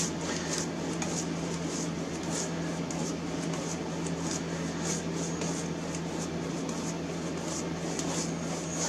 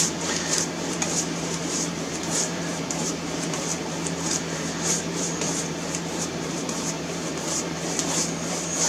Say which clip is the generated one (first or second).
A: second